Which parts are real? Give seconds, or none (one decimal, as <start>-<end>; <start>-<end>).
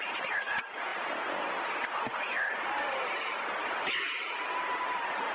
0.0-0.9; 4.1-5.3